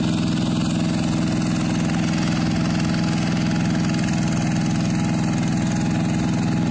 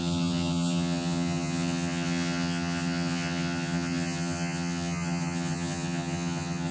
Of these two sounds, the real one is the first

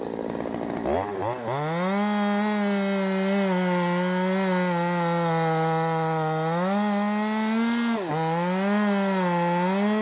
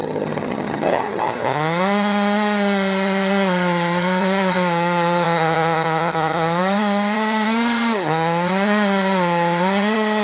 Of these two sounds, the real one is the first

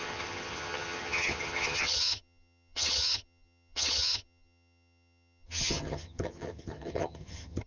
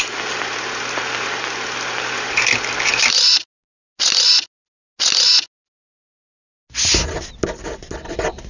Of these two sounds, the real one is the second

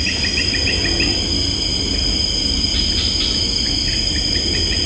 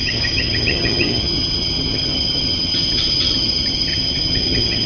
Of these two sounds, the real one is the first